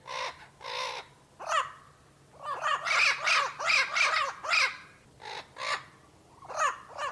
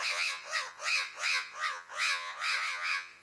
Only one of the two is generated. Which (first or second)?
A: second